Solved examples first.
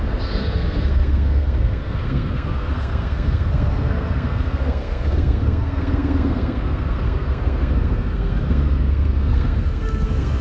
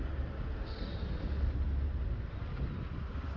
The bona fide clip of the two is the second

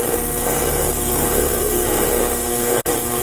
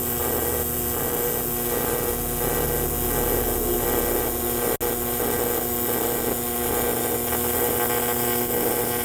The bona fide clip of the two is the second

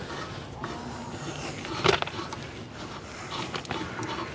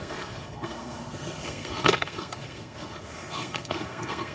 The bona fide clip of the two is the first